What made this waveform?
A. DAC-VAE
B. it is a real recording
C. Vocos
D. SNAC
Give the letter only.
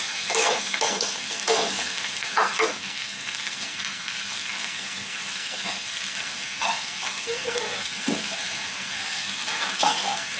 D